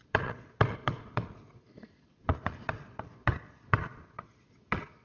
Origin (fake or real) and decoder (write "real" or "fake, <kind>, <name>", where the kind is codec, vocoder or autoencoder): fake, vocoder, Vocos